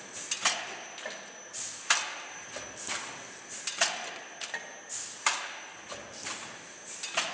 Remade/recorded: recorded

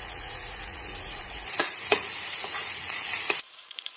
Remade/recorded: remade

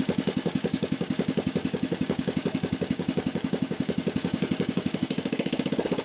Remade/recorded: remade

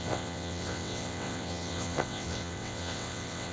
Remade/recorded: remade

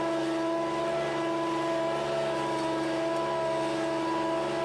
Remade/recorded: recorded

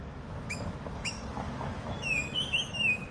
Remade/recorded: remade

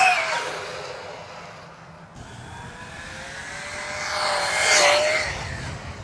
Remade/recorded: recorded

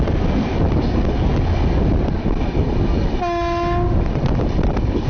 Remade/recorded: recorded